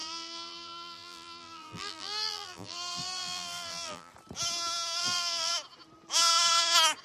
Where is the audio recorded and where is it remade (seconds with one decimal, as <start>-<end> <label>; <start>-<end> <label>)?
0.0-4.1 remade; 4.1-5.0 recorded; 5.0-5.5 remade; 5.5-7.0 recorded